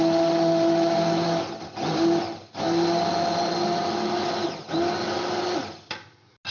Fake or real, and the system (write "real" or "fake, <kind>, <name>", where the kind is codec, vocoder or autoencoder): real